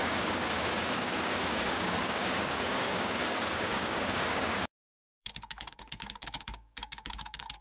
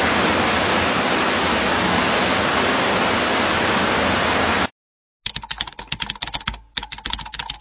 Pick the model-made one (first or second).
first